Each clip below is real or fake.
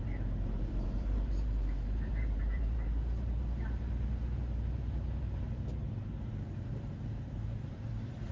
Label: fake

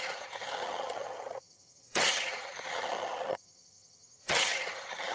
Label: fake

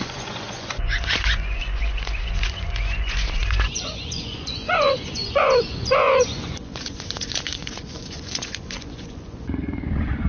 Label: fake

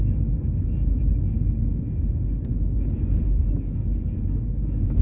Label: real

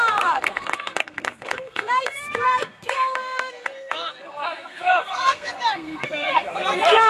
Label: fake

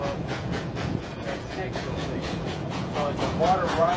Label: fake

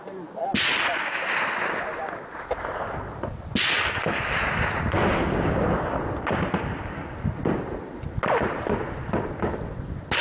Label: real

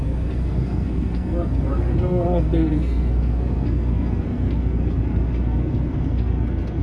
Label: fake